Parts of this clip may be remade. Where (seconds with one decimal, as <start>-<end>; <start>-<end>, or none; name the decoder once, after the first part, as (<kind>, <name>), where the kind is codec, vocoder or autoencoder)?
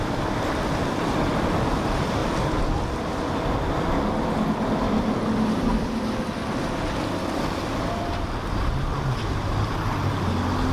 none